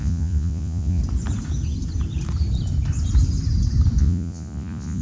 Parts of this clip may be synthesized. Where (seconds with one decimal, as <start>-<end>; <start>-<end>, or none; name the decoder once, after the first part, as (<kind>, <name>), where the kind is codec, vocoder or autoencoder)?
0.0-1.0 (vocoder, Vocos); 4.0-5.0